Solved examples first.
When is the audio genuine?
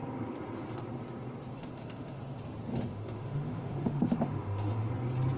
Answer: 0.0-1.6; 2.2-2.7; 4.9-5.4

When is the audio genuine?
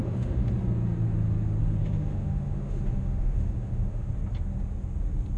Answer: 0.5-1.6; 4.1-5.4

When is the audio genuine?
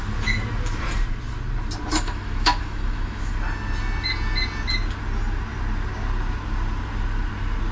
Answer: 0.0-1.9; 3.3-7.7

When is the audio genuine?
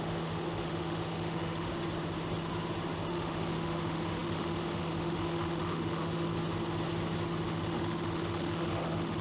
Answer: 1.7-3.1; 6.3-7.4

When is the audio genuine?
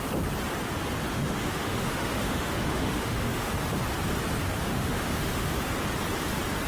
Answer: 0.0-1.1; 3.5-4.7; 5.5-6.7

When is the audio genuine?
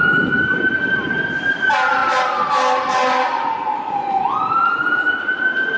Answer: 0.0-5.8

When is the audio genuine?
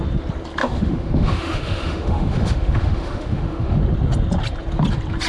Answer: 0.0-0.6; 3.8-5.3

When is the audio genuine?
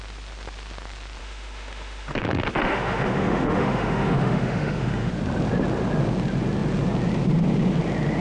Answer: 0.0-1.2; 5.1-8.2